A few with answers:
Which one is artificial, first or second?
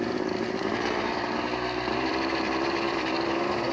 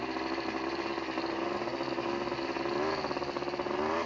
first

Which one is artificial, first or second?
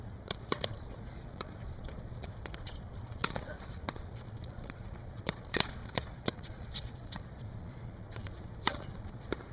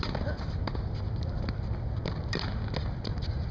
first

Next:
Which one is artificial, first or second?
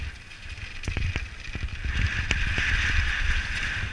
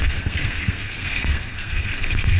second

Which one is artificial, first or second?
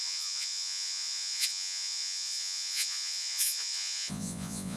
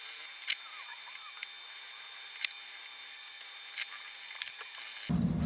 first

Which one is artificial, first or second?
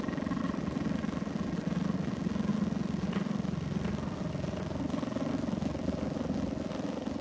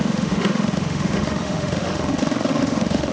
second